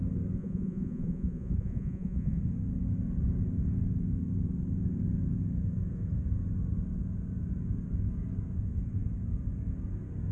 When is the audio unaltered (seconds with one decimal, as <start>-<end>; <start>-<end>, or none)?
0.0-0.4; 2.4-10.3